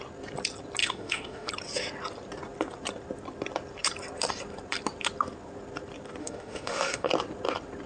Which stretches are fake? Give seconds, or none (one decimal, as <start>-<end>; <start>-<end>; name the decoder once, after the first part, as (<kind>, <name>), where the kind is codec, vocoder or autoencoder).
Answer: 0.8-1.5 (autoencoder, DAC-VAE); 6.2-7.1